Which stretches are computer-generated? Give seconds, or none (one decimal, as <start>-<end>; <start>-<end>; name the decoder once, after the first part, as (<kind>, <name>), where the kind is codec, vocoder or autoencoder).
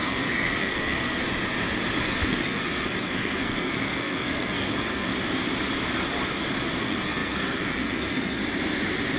0.0-1.2 (codec, SNAC); 2.0-5.1; 6.8-8.4